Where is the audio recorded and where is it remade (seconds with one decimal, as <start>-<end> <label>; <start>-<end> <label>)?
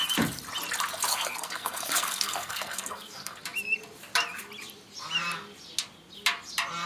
0.0-1.1 recorded; 1.1-3.4 remade; 3.4-6.9 recorded